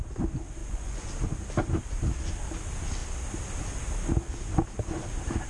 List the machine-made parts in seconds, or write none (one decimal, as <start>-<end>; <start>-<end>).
0.6-1.1